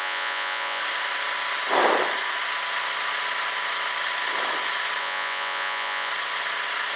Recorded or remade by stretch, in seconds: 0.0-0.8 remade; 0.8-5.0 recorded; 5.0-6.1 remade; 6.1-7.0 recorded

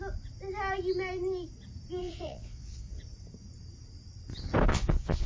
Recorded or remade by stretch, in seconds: 0.0-2.0 recorded; 2.0-3.0 remade; 3.0-4.7 recorded; 4.7-5.3 remade